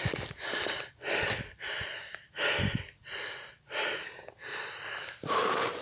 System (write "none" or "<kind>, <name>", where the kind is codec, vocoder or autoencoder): none